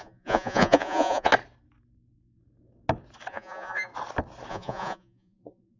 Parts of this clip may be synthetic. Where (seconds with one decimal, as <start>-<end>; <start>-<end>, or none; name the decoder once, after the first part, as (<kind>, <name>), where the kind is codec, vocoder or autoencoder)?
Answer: 0.0-1.3 (vocoder, Vocos); 3.3-3.9; 4.5-5.8